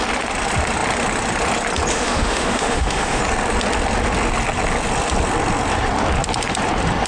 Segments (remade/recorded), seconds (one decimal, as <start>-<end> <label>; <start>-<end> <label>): 0.0-1.9 recorded; 1.9-3.2 remade; 3.2-7.1 recorded